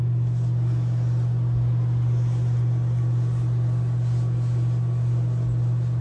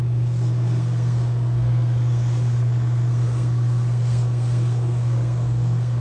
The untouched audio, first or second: first